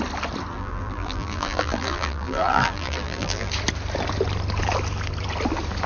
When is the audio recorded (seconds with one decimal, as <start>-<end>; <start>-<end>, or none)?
0.0-0.5; 3.5-5.9